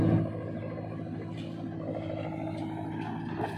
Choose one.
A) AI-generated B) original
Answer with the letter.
B